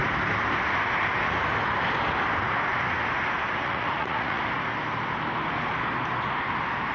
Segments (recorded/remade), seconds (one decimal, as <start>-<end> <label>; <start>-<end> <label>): 0.0-3.6 recorded; 3.6-4.4 remade; 4.4-6.9 recorded